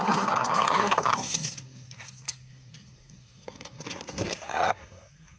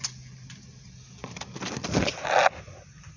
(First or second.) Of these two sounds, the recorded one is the second